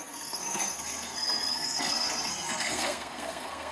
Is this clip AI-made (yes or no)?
yes